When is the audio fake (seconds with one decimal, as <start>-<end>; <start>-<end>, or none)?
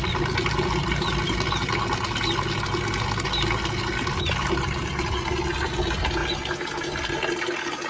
none